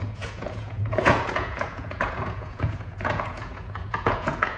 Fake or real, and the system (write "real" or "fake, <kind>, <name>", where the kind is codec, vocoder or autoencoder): fake, vocoder, Vocos